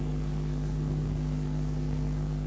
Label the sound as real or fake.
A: fake